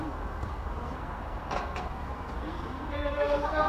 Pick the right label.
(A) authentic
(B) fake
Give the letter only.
B